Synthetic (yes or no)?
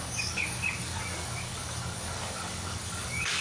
yes